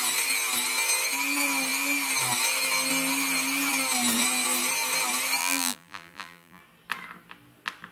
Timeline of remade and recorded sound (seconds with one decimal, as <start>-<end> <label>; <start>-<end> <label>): 0.0-5.4 recorded; 5.4-6.6 remade; 6.6-7.9 recorded